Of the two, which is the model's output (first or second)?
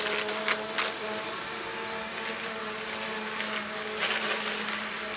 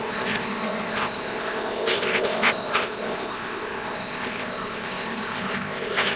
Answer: second